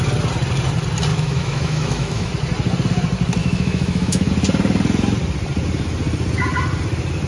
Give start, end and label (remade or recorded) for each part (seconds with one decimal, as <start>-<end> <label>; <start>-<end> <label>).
0.0-1.1 recorded; 1.1-2.3 remade; 2.3-3.4 recorded; 3.4-4.3 remade; 4.3-7.3 recorded